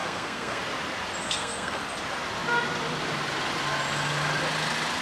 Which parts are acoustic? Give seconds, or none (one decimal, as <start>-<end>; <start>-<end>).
0.6-1.2; 1.8-5.0